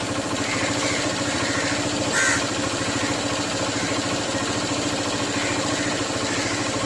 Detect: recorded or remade recorded